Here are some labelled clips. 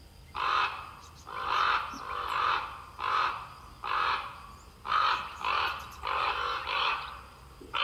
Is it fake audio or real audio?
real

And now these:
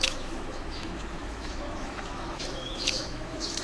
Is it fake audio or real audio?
fake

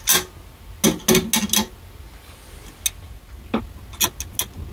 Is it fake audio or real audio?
real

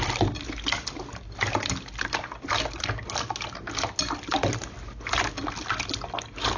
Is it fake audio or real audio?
real